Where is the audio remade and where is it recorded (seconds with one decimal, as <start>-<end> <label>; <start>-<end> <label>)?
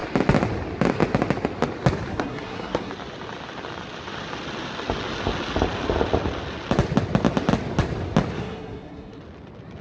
0.0-2.1 recorded; 2.1-2.9 remade; 2.9-8.4 recorded; 8.4-9.2 remade; 9.2-9.8 recorded